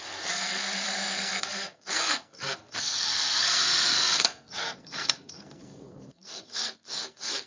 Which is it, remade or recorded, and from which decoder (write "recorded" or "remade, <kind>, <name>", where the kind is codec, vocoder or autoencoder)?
remade, codec, SNAC